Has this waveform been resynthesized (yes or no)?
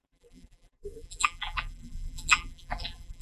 yes